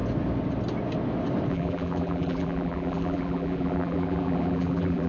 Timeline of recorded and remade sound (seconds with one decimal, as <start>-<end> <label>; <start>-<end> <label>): 0.0-1.5 recorded; 1.5-5.1 remade